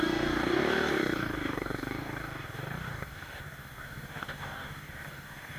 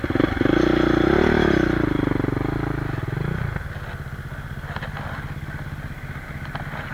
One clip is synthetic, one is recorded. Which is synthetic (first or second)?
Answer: first